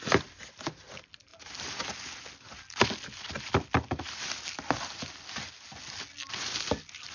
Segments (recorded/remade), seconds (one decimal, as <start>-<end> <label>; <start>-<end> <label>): 0.0-7.1 recorded